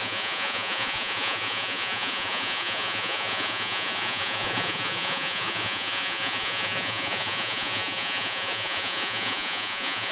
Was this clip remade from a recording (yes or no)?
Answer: yes